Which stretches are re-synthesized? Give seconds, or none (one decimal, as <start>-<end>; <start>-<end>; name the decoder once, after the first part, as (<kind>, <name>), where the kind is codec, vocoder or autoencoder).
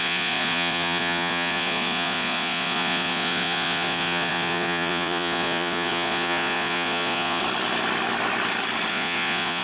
0.0-7.4 (vocoder, Vocos); 8.9-9.6